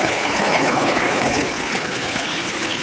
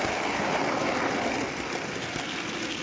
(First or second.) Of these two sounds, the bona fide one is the second